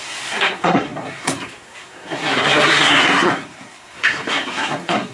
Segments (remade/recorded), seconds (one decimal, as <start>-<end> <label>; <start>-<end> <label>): 0.0-5.1 remade